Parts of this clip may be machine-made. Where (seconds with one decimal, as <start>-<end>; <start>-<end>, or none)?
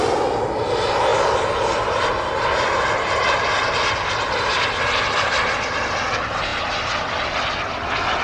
none